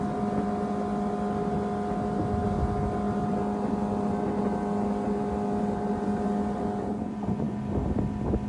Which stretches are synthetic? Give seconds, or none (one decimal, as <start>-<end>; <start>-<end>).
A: 6.9-7.6